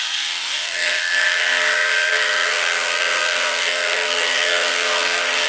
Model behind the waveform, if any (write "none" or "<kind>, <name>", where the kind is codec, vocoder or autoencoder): codec, SNAC